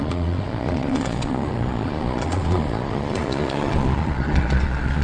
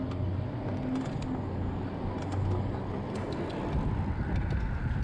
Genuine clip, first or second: second